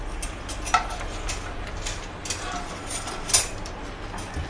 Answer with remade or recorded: recorded